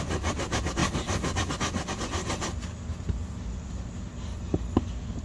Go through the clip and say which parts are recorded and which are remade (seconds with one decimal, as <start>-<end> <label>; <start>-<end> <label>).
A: 0.0-5.2 recorded